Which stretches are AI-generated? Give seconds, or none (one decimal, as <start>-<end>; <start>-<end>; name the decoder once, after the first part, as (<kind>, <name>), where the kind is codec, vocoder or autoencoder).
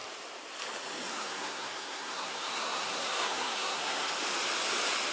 1.1-4.1 (codec, SNAC)